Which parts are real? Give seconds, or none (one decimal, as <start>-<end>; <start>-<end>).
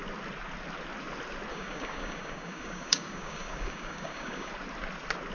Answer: 0.0-1.5; 4.5-5.3